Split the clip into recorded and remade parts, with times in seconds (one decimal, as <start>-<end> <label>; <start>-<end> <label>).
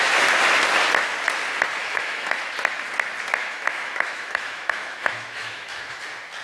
0.0-1.8 recorded; 1.8-2.4 remade; 2.4-3.4 recorded; 3.4-6.0 remade; 6.0-6.4 recorded